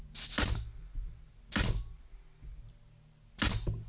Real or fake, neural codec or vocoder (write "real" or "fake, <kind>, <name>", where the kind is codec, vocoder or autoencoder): real